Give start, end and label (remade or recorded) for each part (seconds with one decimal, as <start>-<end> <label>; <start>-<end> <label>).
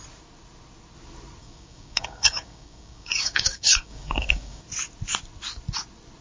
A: 0.0-1.4 recorded; 1.4-4.6 remade; 4.6-6.2 recorded